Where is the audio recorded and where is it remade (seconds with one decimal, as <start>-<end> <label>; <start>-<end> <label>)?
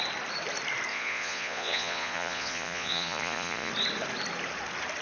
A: 0.0-0.9 recorded; 0.9-3.7 remade; 3.7-5.0 recorded